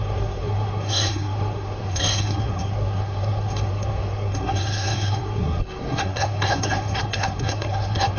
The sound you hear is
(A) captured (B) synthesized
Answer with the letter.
B